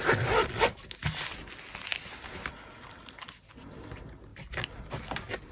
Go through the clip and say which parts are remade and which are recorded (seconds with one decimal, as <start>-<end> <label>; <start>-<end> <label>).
0.0-5.5 recorded